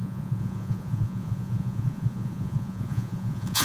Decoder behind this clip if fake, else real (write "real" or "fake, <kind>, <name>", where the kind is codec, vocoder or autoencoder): fake, vocoder, Vocos